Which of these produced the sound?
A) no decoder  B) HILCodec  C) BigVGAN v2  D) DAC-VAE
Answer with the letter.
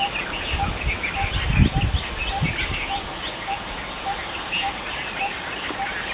A